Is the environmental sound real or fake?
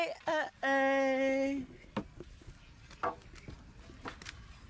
real